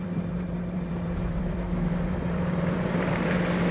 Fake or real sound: fake